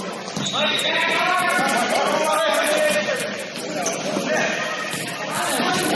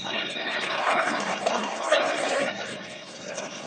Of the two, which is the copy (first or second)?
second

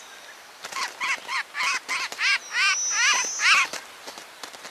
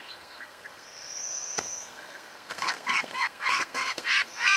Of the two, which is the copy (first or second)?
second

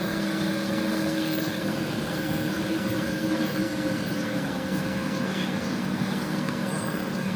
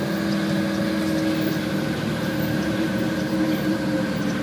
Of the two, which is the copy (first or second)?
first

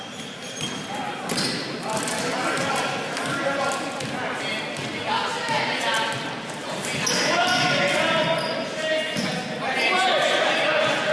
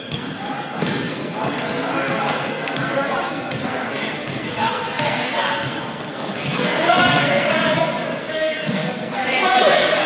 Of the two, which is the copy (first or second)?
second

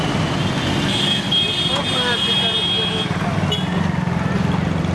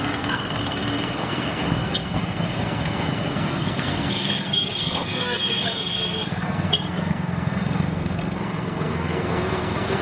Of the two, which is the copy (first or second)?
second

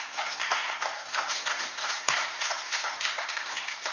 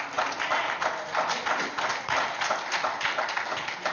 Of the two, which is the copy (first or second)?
first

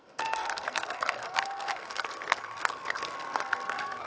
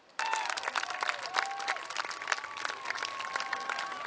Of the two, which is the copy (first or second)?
first